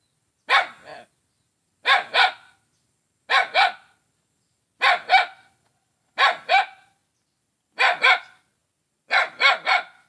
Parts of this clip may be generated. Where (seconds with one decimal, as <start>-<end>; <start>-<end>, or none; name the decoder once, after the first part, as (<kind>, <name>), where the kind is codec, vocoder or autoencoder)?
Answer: none